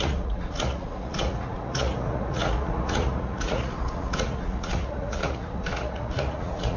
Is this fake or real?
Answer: fake